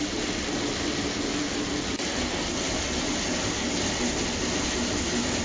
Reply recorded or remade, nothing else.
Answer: recorded